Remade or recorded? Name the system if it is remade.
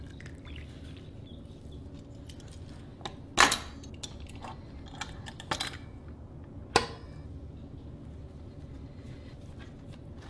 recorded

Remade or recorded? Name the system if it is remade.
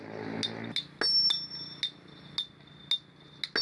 recorded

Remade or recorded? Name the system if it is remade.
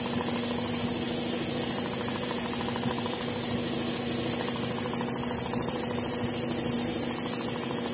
recorded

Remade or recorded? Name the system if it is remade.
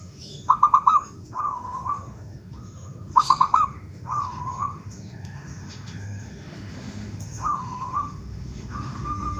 remade, autoencoder, DAC-VAE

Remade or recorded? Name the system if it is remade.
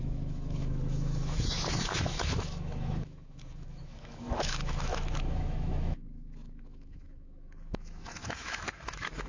remade, autoencoder, DAC-VAE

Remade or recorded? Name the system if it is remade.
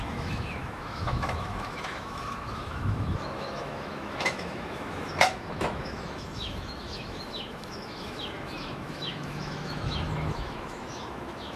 remade, autoencoder, DAC-VAE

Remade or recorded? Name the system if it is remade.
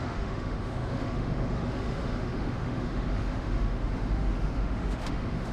remade, autoencoder, DAC-VAE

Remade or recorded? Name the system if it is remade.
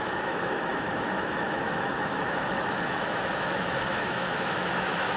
remade, autoencoder, DAC-VAE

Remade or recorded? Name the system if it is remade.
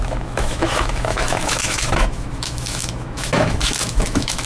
remade, autoencoder, DAC-VAE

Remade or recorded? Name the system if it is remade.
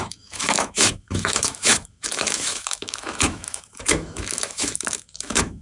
remade, autoencoder, DAC-VAE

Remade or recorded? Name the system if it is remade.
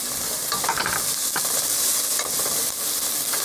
recorded